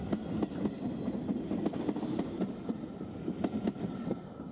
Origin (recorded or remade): recorded